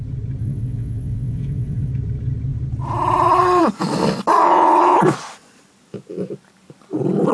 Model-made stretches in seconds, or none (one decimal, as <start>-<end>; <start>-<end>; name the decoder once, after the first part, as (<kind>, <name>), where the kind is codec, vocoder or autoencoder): 0.4-1.9 (vocoder, WaveNeXt); 4.4-5.0